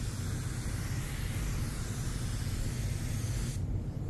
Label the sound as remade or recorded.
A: recorded